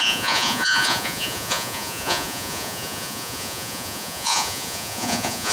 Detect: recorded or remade remade